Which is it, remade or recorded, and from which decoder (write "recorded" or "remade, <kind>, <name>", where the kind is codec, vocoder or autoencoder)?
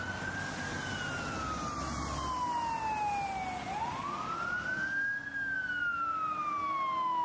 recorded